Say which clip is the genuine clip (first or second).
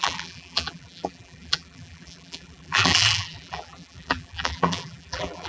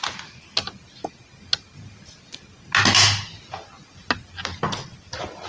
second